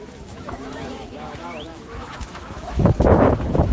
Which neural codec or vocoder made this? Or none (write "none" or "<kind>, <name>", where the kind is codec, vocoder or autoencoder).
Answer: autoencoder, DAC-VAE